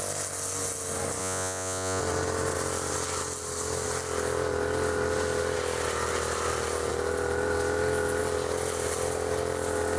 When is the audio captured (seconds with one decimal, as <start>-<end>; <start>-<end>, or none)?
0.0-1.2; 2.0-10.0